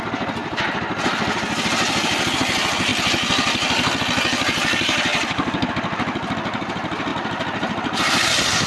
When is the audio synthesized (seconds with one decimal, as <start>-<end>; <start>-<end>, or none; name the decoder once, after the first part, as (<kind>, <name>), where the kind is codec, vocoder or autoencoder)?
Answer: 0.4-2.4 (vocoder, BigVGAN v2); 2.9-4.0